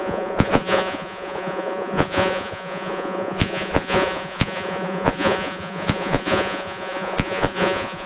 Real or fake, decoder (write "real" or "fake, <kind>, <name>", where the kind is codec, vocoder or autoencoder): fake, vocoder, Vocos